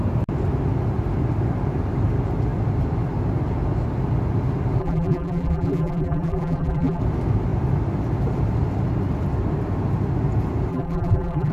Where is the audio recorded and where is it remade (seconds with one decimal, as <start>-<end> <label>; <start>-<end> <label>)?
0.0-4.8 recorded; 4.8-7.0 remade; 7.0-10.7 recorded; 10.7-11.5 remade